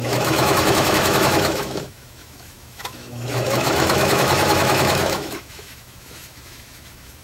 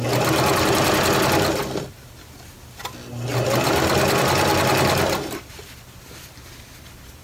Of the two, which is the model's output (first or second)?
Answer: first